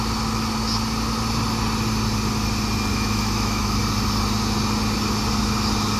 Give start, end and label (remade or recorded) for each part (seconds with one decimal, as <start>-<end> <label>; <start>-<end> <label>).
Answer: 0.0-2.9 recorded; 2.9-3.8 remade; 3.8-6.0 recorded